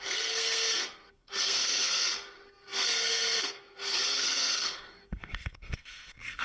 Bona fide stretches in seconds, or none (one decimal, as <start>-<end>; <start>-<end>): none